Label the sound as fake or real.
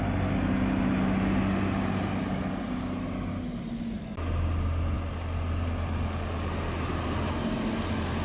real